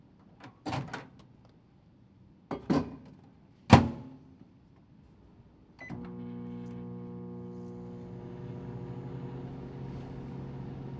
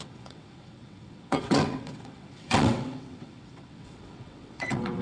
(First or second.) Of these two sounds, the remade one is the second